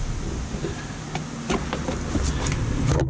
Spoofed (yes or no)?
no